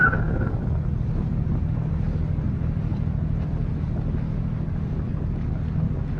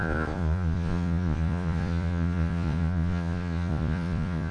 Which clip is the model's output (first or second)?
second